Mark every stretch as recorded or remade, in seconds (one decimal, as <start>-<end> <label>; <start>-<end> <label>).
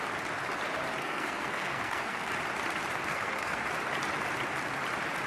0.0-1.0 recorded; 1.0-2.3 remade; 2.3-3.1 recorded; 3.1-3.6 remade; 3.6-5.3 recorded